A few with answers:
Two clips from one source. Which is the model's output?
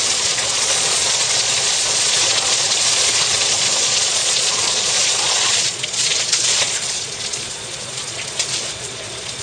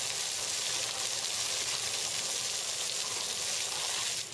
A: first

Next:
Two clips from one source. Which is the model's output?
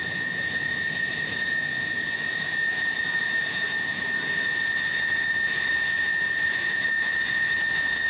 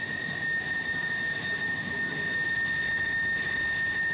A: first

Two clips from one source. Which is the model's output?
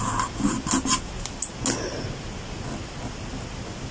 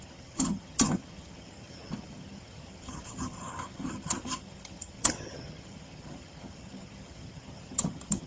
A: second